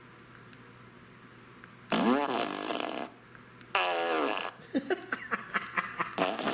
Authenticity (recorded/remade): recorded